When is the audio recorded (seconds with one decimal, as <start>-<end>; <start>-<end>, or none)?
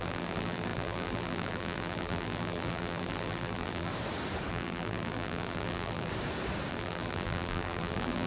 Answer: 3.9-4.5; 6.1-6.7